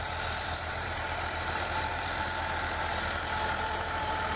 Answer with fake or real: fake